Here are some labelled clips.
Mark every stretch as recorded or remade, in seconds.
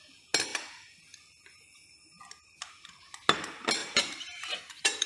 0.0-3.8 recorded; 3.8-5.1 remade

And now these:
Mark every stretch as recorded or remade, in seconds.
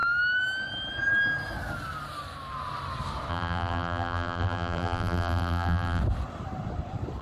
0.0-3.3 recorded; 3.3-6.0 remade; 6.0-7.2 recorded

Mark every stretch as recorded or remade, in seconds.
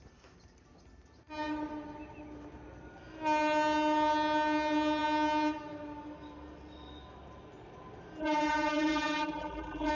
0.0-8.2 recorded; 8.2-9.9 remade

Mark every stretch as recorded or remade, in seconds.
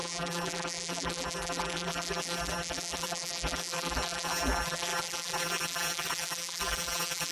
0.0-7.3 remade